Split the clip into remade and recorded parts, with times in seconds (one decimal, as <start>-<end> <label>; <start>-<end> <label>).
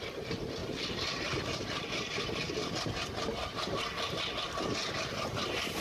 0.0-0.6 recorded; 0.6-2.7 remade; 2.7-5.8 recorded